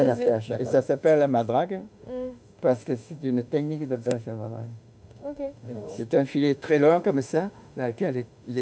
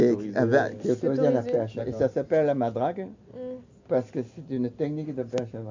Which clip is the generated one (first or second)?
first